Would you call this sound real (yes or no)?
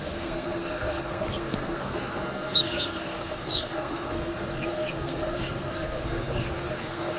no